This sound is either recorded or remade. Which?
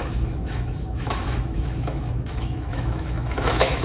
remade